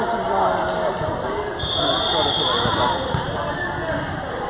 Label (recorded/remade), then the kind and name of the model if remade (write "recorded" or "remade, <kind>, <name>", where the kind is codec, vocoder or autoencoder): recorded